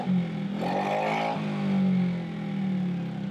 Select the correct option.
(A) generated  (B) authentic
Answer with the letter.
B